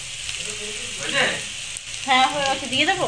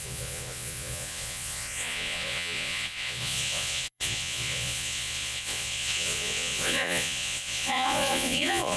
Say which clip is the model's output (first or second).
second